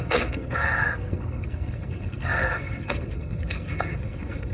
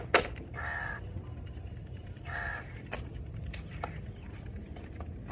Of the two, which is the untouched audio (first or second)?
second